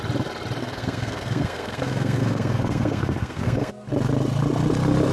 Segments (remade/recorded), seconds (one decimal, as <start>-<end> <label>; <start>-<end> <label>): 0.0-0.6 recorded; 0.6-3.7 remade; 3.7-5.1 recorded